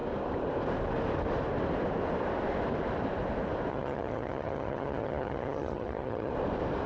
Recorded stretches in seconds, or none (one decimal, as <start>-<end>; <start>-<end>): 0.0-3.7; 6.3-6.9